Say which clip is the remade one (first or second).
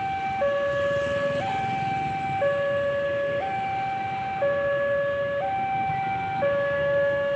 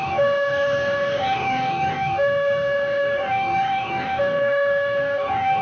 second